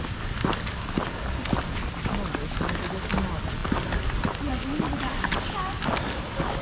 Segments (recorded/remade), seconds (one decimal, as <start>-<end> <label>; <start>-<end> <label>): 0.0-6.6 recorded